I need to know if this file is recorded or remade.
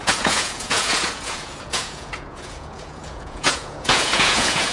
remade